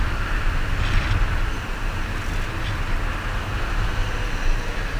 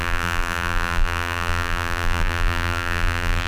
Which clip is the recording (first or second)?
first